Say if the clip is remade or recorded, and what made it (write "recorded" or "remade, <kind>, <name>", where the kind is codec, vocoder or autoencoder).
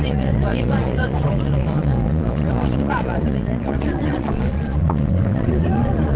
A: remade, vocoder, Vocos